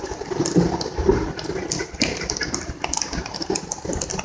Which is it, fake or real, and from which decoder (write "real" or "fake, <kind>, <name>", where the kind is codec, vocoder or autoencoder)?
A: real